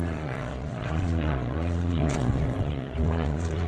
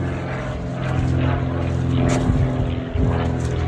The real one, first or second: second